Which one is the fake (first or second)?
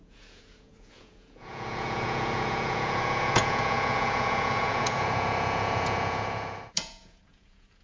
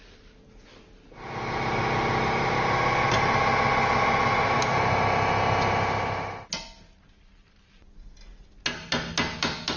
first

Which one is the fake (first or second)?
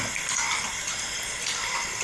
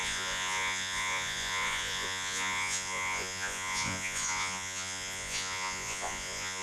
second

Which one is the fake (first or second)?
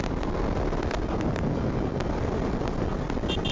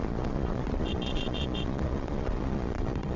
second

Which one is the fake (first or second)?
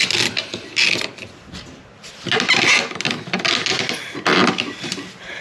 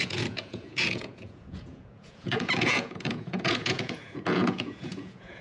second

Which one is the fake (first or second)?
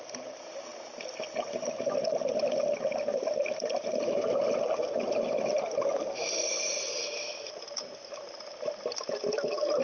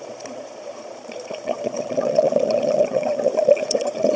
second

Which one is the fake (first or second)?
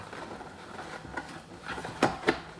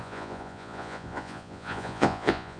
second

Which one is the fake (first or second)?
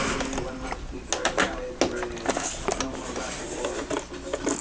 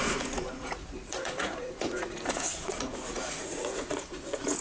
second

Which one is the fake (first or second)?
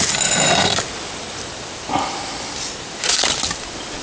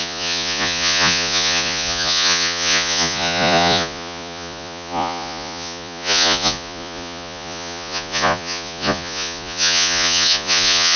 second